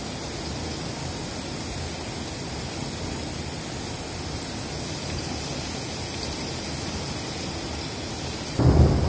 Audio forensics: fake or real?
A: real